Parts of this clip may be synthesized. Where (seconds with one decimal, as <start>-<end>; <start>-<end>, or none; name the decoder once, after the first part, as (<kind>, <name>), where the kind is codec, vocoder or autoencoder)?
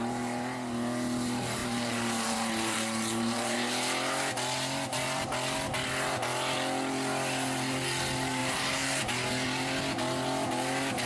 1.6-3.7 (vocoder, BigVGAN v2); 8.4-9.0